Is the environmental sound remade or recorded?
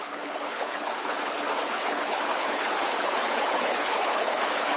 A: remade